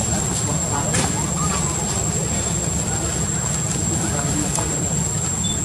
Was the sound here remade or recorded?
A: recorded